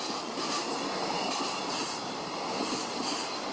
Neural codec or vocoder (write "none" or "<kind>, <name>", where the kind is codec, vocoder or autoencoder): none